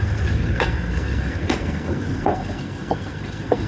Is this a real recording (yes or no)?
no